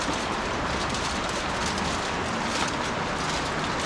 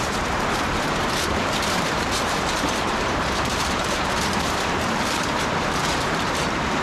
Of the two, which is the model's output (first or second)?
second